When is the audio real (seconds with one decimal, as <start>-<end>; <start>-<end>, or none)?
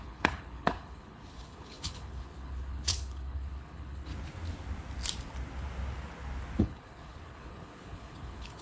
4.1-6.6